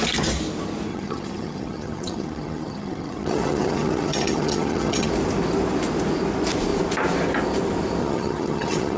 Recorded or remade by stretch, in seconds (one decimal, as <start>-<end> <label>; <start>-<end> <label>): 0.0-0.9 recorded; 0.9-5.1 remade; 5.1-8.0 recorded; 8.0-9.0 remade

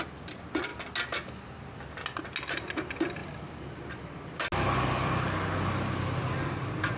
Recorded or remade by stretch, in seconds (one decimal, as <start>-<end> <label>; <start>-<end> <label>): 0.0-7.0 recorded